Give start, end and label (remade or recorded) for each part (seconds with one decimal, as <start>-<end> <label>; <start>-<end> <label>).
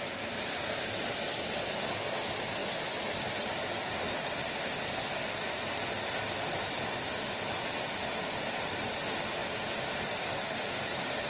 0.0-11.3 recorded